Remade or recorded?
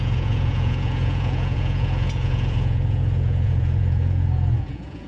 remade